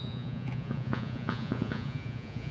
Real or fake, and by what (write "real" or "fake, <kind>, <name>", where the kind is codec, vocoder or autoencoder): fake, vocoder, Vocos